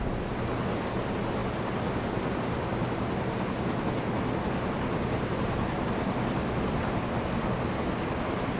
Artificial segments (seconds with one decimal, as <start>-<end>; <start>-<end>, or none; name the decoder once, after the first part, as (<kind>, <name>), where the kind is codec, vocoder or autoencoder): none